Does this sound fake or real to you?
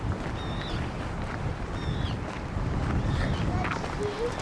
real